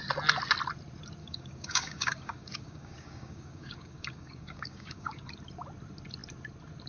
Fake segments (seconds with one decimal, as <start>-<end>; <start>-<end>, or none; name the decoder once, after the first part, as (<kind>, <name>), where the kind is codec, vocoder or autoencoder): 1.2-5.3 (codec, DAC)